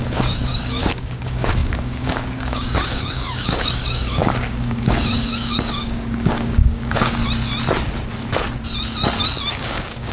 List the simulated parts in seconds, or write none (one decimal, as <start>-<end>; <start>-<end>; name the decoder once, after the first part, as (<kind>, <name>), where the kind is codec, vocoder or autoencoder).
0.0-7.2 (codec, DAC); 9.5-10.1